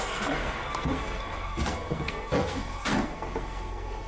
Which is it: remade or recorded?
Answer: remade